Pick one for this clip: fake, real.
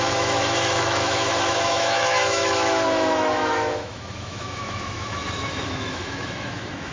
fake